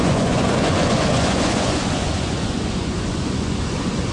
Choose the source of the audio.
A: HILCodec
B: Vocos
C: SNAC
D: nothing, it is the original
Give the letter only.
B